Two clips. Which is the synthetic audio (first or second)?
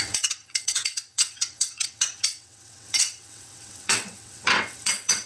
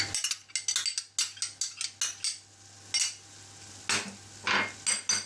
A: first